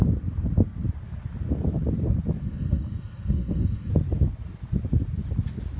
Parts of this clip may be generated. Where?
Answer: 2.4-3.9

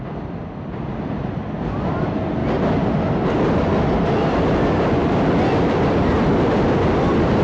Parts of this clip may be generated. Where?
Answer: 2.4-6.4

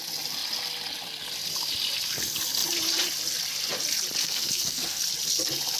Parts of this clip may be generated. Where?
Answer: 4.2-5.0

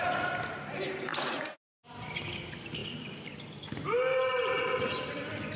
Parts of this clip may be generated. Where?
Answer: 1.1-1.8

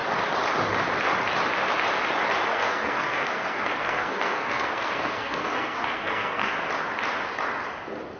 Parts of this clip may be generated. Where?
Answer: 2.5-6.5